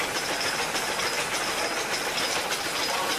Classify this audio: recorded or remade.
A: recorded